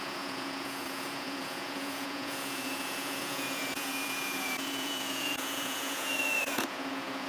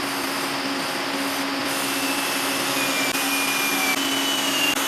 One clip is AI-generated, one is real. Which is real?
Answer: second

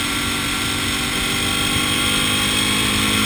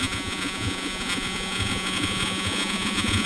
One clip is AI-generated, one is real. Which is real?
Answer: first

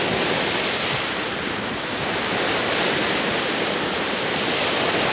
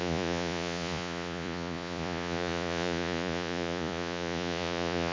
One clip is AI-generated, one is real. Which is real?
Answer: first